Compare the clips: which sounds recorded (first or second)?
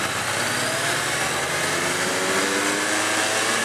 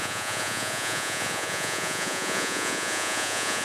first